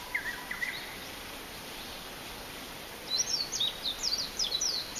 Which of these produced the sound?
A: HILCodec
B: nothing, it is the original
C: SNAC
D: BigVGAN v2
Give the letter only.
D